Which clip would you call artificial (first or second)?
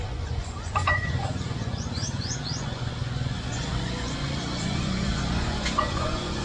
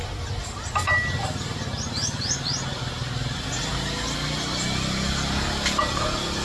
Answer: first